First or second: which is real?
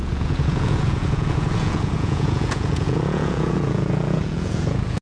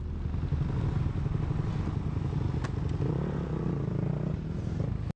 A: second